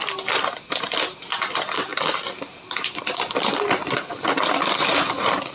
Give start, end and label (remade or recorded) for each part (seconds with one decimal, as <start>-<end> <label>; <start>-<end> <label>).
0.0-5.5 recorded